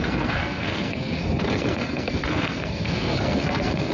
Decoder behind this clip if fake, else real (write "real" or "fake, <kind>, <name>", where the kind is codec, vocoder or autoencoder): fake, codec, SNAC